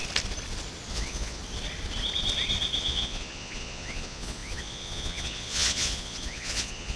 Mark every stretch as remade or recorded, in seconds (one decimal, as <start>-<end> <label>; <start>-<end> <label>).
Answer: 0.0-0.9 recorded; 0.9-1.4 remade; 1.4-2.8 recorded; 2.8-7.0 remade